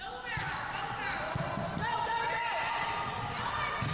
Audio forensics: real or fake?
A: real